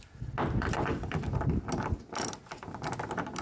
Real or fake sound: real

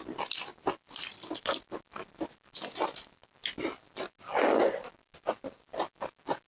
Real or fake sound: real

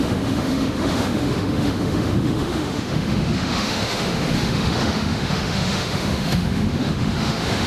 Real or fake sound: fake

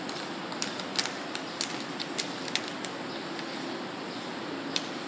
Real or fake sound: real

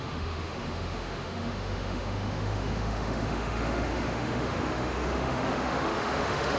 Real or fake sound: fake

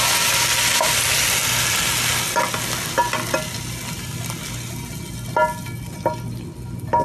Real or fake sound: real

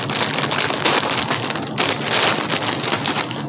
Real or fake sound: real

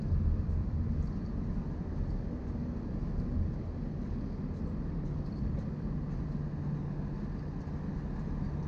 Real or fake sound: real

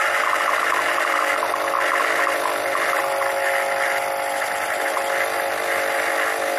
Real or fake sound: real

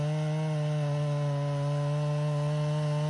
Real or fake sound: real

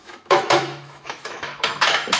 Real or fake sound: fake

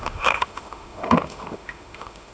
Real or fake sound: fake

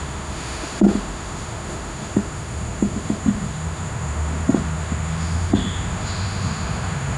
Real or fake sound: fake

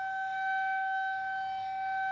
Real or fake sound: fake